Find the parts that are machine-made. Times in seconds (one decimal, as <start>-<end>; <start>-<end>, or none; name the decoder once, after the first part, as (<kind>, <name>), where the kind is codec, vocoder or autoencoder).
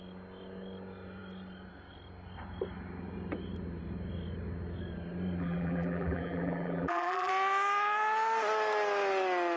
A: 5.4-7.3 (vocoder, BigVGAN v2)